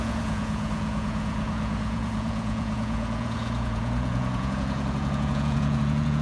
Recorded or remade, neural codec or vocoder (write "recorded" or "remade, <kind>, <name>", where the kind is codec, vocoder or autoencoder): remade, vocoder, Vocos